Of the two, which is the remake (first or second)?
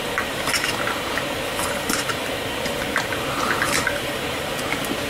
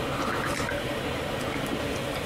first